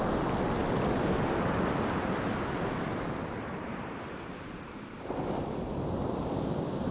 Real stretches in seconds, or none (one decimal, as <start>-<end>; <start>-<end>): 0.0-0.6; 4.7-6.9